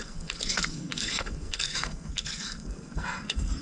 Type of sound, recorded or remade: remade